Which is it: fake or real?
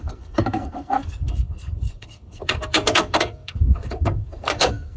fake